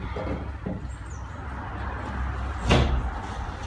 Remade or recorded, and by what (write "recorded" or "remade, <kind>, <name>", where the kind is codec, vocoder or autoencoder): recorded